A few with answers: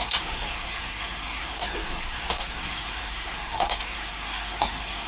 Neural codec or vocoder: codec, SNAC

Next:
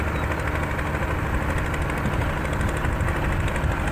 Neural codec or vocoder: none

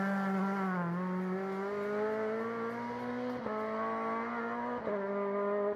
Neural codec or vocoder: none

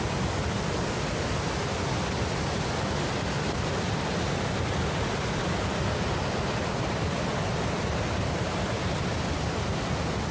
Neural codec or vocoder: none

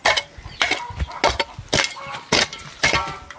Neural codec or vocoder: none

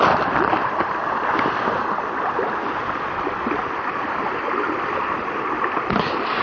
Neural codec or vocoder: none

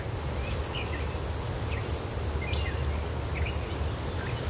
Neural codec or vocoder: none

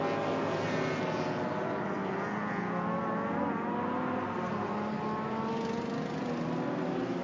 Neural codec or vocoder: none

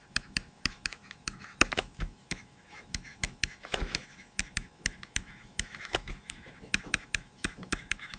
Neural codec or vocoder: autoencoder, DAC-VAE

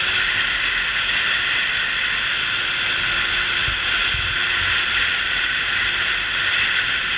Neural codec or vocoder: none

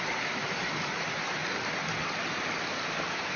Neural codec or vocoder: none